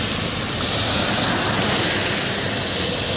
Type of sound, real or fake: real